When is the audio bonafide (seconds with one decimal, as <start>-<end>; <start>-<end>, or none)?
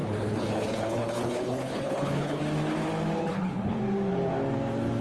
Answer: 2.4-3.2; 3.8-5.0